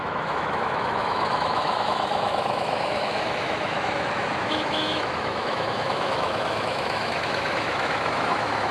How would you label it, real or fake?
fake